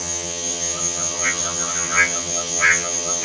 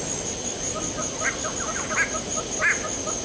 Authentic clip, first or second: second